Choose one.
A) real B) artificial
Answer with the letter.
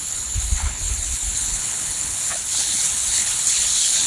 B